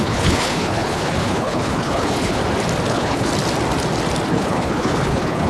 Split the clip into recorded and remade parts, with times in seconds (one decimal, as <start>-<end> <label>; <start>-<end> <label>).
0.0-2.4 remade; 2.4-2.9 recorded; 2.9-3.3 remade; 3.3-4.3 recorded; 4.3-5.5 remade